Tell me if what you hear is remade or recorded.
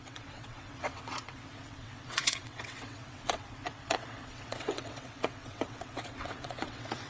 remade